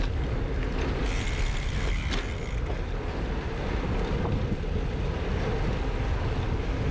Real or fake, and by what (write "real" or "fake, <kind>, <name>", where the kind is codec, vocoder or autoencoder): real